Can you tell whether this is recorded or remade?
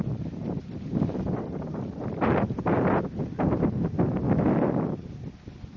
recorded